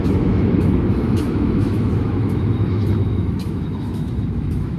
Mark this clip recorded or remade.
remade